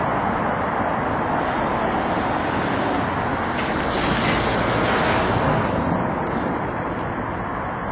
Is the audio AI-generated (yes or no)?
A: no